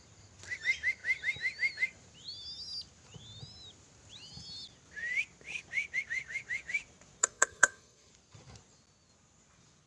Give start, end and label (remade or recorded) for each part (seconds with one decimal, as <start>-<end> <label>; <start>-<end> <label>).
0.0-7.2 recorded; 7.2-8.1 remade; 8.1-9.9 recorded